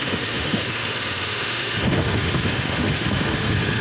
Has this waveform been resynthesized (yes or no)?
yes